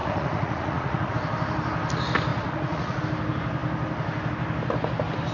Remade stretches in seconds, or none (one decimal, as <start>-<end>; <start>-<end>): 0.0-1.1; 2.3-3.0